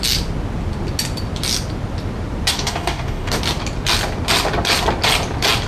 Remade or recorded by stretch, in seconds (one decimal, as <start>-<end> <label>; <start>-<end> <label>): 0.0-2.5 recorded; 2.5-3.4 remade; 3.4-5.7 recorded